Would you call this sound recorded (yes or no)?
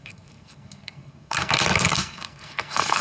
no